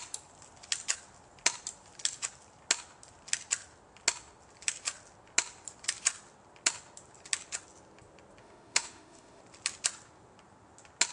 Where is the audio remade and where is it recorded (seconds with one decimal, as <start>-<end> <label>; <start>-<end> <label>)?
0.0-8.4 recorded; 8.4-9.4 remade; 9.4-11.1 recorded

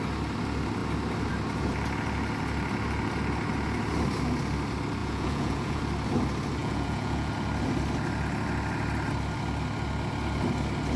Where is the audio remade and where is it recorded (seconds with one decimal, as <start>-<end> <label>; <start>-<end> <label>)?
0.0-5.0 recorded; 5.0-5.8 remade; 5.8-6.6 recorded; 6.6-7.3 remade; 7.3-11.0 recorded

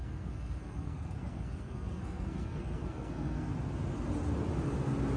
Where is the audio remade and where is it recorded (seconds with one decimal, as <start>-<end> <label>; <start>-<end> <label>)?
0.0-3.5 remade; 3.5-5.2 recorded

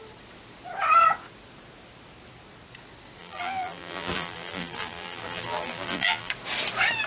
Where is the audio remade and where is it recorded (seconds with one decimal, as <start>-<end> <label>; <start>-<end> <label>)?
0.0-3.2 recorded; 3.2-6.3 remade; 6.3-7.1 recorded